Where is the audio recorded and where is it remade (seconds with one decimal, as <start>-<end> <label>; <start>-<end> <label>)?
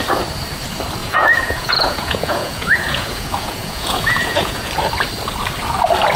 0.0-1.0 recorded; 1.0-4.7 remade; 4.7-6.2 recorded